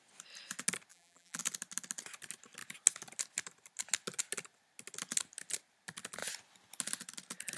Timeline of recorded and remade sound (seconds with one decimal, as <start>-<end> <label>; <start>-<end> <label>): 0.0-0.9 recorded; 0.9-1.4 remade; 1.4-7.6 recorded